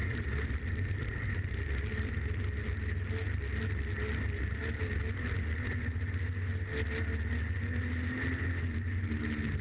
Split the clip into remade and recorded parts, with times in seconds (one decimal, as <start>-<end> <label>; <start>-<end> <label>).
0.0-2.1 remade; 2.1-9.6 recorded